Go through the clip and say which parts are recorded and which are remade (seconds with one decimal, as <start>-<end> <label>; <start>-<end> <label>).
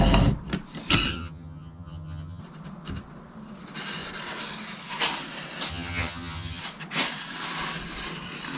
0.0-1.1 recorded; 1.1-2.4 remade; 2.4-5.7 recorded; 5.7-6.6 remade; 6.6-8.6 recorded